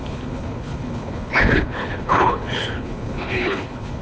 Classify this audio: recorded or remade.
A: remade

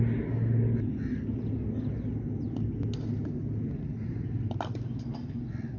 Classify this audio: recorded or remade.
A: recorded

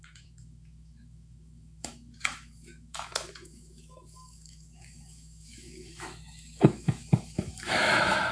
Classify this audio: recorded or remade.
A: remade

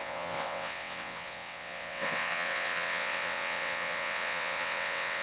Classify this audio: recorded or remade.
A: remade